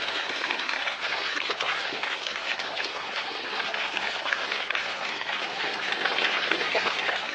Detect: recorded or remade remade